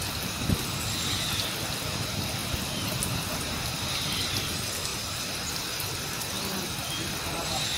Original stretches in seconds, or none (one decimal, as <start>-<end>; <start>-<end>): 0.0-7.8